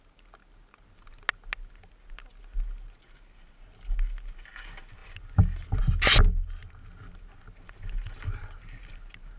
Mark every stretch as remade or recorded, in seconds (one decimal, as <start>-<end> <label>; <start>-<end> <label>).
0.0-9.4 recorded